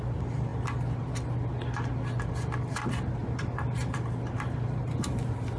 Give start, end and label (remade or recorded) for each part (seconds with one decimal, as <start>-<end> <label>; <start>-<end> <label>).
0.0-3.2 recorded; 3.2-4.1 remade; 4.1-5.6 recorded